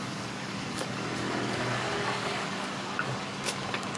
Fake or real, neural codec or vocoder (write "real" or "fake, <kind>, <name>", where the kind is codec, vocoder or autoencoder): fake, codec, DAC